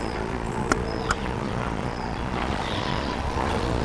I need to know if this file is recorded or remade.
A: remade